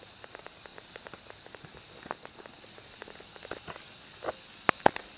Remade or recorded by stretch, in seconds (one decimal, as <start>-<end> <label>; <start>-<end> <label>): 0.0-5.2 recorded